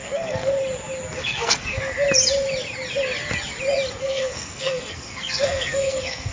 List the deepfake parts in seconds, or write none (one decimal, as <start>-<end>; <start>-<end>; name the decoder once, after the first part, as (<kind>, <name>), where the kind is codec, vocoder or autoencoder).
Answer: 0.0-0.5 (codec, SNAC); 1.2-1.8; 4.0-6.3